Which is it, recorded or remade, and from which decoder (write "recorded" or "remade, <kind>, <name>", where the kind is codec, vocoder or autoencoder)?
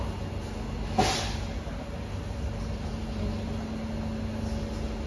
recorded